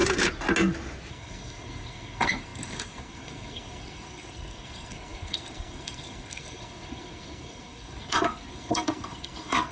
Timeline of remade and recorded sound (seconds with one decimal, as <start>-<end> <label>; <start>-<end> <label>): 0.0-1.1 recorded; 1.1-9.7 remade